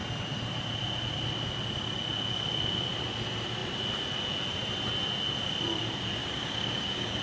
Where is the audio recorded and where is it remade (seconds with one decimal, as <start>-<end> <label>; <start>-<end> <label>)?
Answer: 0.0-6.2 recorded; 6.2-7.2 remade